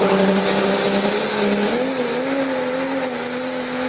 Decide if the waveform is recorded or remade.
recorded